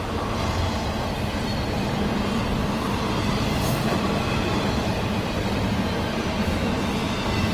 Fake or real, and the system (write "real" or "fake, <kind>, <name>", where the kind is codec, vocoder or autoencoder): real